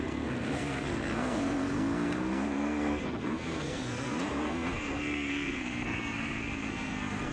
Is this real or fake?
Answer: fake